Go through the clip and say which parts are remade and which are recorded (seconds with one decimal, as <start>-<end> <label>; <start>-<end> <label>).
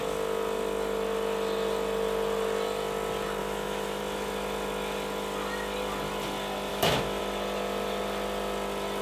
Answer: 0.0-3.4 recorded; 3.4-4.0 remade; 4.0-6.7 recorded; 6.7-7.2 remade; 7.2-9.0 recorded